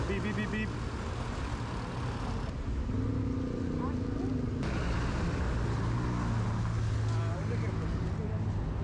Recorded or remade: recorded